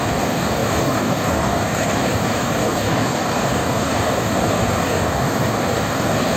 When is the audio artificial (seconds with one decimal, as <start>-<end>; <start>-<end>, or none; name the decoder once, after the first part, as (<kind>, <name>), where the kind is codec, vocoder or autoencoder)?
0.0-6.4 (codec, DAC)